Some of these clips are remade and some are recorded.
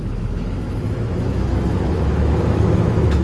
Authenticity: remade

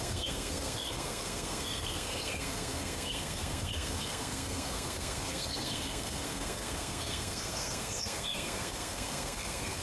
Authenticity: remade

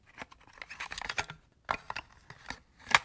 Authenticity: recorded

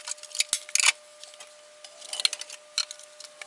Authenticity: recorded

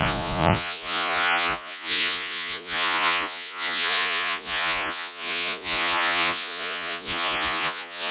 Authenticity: remade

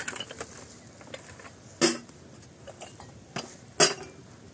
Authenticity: recorded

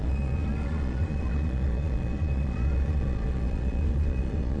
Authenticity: remade